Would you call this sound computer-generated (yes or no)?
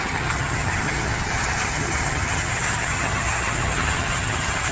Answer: yes